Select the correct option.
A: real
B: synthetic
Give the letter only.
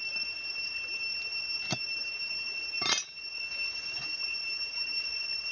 A